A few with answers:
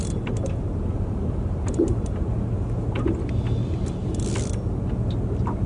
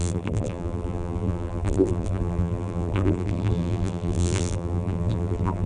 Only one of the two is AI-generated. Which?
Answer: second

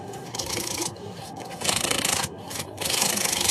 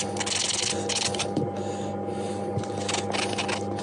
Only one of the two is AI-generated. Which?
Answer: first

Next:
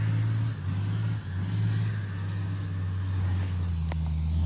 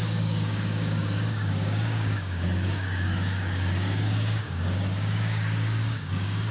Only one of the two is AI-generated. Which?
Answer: second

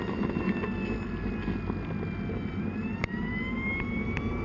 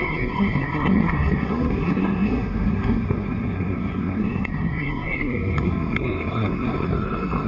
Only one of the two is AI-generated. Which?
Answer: second